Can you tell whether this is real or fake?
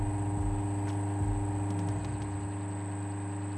real